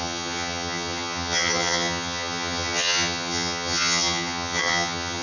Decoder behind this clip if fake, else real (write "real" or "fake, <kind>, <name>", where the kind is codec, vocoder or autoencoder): fake, vocoder, HiFi-GAN